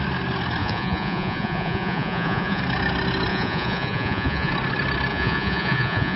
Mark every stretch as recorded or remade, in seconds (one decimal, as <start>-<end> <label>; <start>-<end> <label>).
0.0-0.6 recorded; 0.6-2.6 remade; 2.6-3.3 recorded; 3.3-4.5 remade; 4.5-5.1 recorded; 5.1-6.2 remade